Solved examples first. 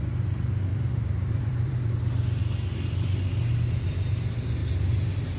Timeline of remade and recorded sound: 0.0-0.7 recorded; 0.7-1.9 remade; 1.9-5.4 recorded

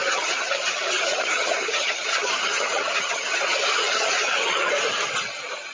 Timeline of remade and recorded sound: 0.0-3.4 remade; 3.4-3.8 recorded; 3.8-4.7 remade; 4.7-5.7 recorded

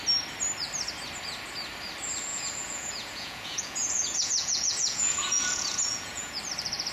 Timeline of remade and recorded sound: 0.0-2.3 recorded; 2.3-6.4 remade; 6.4-6.9 recorded

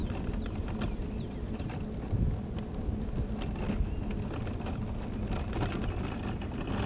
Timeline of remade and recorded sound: 0.0-6.9 recorded

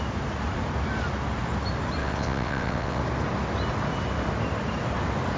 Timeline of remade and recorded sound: 0.0-2.0 recorded; 2.0-3.0 remade; 3.0-5.4 recorded

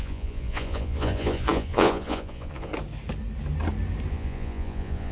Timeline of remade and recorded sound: 0.0-2.7 remade; 2.7-4.1 recorded; 4.1-5.1 remade

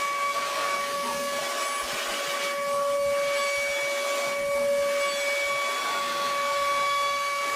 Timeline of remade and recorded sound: 0.0-1.4 remade; 1.4-5.8 recorded; 5.8-7.6 remade